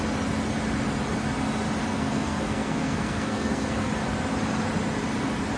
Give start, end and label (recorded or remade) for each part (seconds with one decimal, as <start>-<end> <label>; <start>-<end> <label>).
0.0-1.9 recorded; 1.9-3.9 remade; 3.9-5.6 recorded